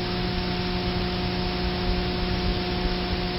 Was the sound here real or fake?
real